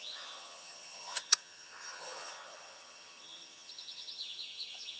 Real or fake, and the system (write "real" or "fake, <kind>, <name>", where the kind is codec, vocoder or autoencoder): fake, vocoder, HiFi-GAN